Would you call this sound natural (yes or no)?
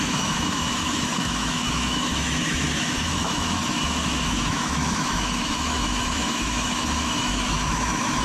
no